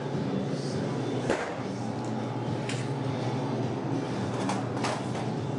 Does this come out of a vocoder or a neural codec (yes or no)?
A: no